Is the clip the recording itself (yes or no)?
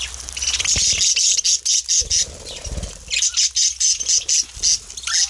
yes